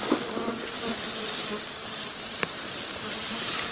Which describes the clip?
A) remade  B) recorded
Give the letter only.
B